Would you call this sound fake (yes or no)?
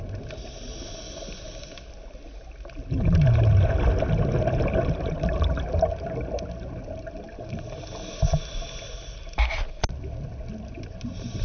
no